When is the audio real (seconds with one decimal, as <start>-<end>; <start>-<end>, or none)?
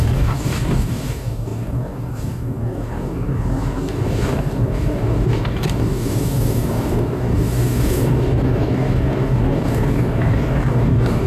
none